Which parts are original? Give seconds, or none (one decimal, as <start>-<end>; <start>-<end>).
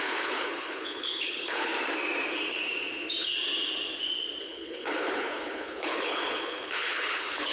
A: 1.7-4.4